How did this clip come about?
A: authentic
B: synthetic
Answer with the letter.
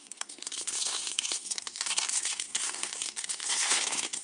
B